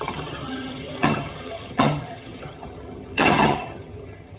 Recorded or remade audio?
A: remade